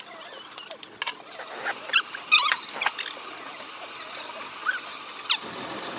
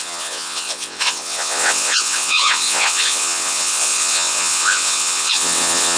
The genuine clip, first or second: first